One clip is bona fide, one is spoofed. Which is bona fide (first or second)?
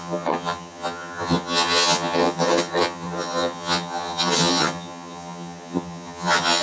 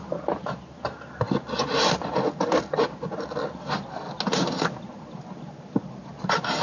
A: second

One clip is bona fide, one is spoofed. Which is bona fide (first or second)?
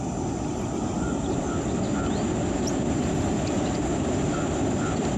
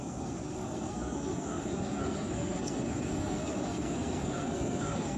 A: first